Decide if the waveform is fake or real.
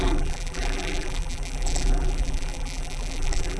fake